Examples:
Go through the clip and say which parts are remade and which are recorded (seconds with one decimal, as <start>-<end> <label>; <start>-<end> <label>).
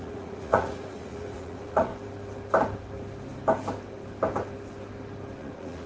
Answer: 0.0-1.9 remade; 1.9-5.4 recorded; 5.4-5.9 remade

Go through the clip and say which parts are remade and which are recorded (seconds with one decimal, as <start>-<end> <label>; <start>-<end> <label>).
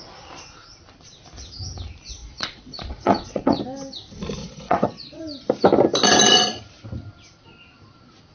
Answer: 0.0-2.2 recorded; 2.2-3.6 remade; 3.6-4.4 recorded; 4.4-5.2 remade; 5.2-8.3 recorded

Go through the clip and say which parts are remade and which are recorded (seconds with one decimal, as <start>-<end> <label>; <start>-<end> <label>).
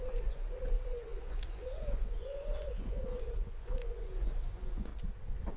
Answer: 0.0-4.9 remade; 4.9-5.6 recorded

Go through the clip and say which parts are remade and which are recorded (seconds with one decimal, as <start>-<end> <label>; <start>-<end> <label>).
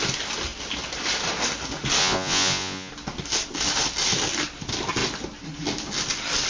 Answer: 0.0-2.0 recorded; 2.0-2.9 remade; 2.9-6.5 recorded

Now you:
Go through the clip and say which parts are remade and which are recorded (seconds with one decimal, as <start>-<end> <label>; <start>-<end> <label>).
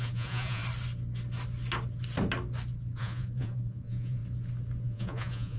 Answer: 0.0-0.6 remade; 0.6-3.0 recorded; 3.0-4.2 remade; 4.2-4.8 recorded; 4.8-5.6 remade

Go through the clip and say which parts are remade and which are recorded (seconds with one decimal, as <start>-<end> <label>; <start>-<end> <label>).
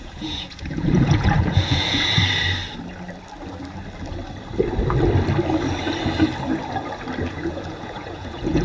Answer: 0.0-2.2 remade; 2.2-7.3 recorded; 7.3-8.6 remade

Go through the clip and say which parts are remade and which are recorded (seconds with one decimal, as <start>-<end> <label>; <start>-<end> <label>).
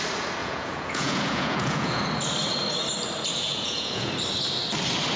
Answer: 0.0-0.4 recorded; 0.4-2.0 remade; 2.0-3.3 recorded; 3.3-4.1 remade; 4.1-5.2 recorded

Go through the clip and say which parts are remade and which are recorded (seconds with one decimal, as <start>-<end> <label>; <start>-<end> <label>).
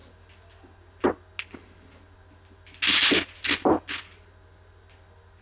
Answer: 0.0-5.4 recorded